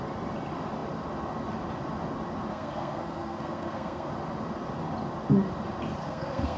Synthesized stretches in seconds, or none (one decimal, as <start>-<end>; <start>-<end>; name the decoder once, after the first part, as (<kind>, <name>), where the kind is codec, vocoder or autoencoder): 2.5-4.1 (codec, SNAC); 6.0-6.6